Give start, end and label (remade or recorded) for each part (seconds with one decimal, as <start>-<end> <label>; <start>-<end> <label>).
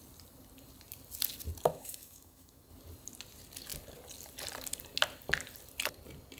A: 0.0-1.7 recorded; 1.7-2.7 remade; 2.7-6.4 recorded